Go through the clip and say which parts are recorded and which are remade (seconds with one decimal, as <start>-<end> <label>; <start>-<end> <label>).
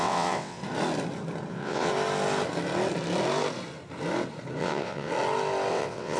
0.0-0.6 remade; 0.6-1.5 recorded; 1.5-1.9 remade; 1.9-4.6 recorded; 4.6-5.1 remade; 5.1-5.7 recorded; 5.7-6.2 remade